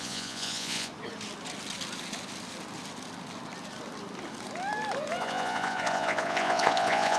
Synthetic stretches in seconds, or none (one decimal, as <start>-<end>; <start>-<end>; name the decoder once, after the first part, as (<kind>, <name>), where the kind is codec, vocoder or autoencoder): 0.0-0.9 (vocoder, Vocos); 5.2-7.2